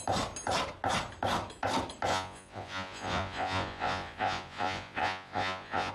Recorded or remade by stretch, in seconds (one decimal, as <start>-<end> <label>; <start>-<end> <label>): 0.0-2.1 recorded; 2.1-5.9 remade

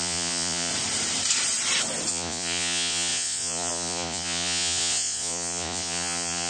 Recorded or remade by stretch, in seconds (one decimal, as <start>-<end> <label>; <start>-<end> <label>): 0.0-0.7 remade; 0.7-2.1 recorded; 2.1-6.5 remade